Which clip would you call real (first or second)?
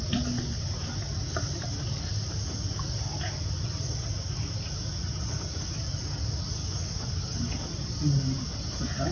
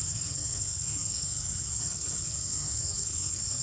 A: first